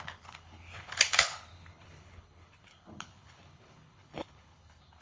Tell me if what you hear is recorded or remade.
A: remade